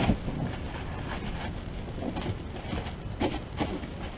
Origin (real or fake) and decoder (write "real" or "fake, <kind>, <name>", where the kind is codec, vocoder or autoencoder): real